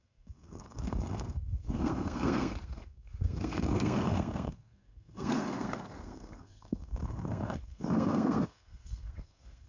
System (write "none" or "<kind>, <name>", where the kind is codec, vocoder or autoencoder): codec, SNAC